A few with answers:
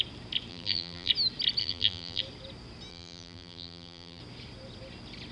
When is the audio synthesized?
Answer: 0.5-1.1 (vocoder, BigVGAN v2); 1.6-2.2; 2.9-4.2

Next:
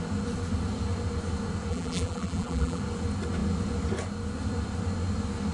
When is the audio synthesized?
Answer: 1.7-2.8 (vocoder, BigVGAN v2)

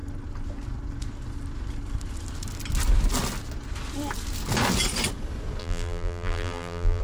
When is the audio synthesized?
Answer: 5.6-7.0 (vocoder, BigVGAN v2)